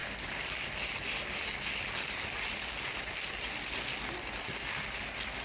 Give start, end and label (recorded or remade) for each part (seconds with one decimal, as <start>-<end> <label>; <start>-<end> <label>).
0.0-5.4 recorded